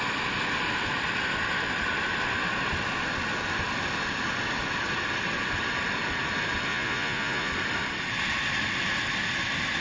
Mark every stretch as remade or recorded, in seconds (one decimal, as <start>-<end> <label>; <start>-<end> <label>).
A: 0.0-6.7 recorded; 6.7-7.5 remade; 7.5-9.8 recorded

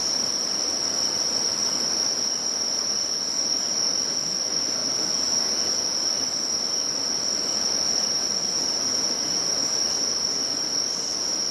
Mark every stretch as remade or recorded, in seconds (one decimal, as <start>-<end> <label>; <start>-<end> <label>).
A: 0.0-4.8 remade; 4.8-6.1 recorded; 6.1-11.5 remade

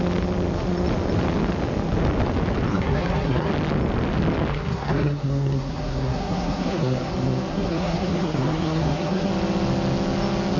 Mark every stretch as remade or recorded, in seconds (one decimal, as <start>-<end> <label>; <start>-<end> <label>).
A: 0.0-2.7 recorded; 2.7-3.5 remade; 3.5-4.5 recorded; 4.5-7.1 remade; 7.1-7.5 recorded; 7.5-9.3 remade; 9.3-10.6 recorded

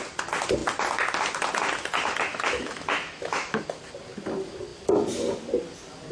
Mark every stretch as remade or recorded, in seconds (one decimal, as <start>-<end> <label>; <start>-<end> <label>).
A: 0.0-2.3 recorded; 2.3-3.6 remade; 3.6-6.1 recorded

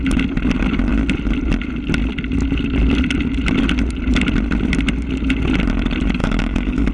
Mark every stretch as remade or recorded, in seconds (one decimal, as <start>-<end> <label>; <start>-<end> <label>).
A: 0.0-6.2 recorded; 6.2-6.9 remade

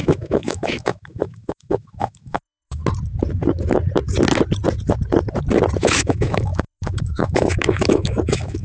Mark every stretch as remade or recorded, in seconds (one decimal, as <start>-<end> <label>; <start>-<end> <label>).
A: 0.0-2.8 remade; 2.8-5.8 recorded; 5.8-8.6 remade

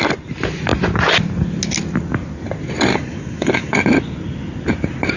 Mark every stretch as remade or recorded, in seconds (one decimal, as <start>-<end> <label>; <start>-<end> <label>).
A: 0.0-2.9 recorded; 2.9-3.8 remade; 3.8-5.2 recorded